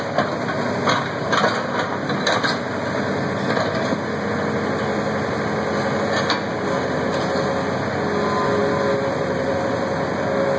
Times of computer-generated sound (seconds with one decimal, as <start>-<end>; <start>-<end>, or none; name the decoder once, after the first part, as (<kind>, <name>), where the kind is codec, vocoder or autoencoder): none